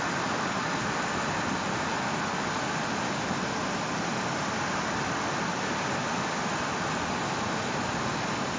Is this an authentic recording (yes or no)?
yes